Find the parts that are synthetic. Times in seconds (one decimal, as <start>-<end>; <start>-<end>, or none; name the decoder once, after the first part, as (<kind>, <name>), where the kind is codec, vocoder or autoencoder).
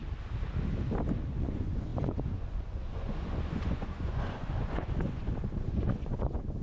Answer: 1.3-6.6 (vocoder, Vocos)